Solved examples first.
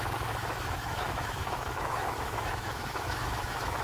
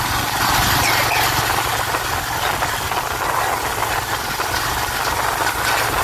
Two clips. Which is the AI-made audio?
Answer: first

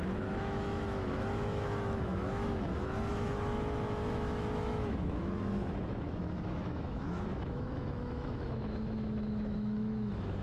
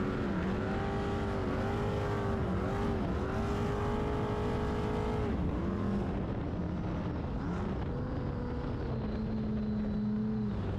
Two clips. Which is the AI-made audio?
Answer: first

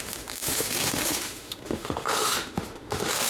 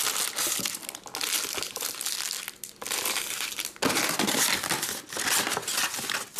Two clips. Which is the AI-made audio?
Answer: first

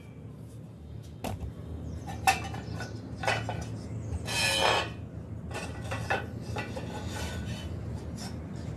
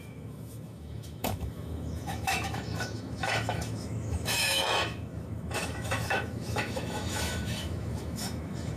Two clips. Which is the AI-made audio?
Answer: second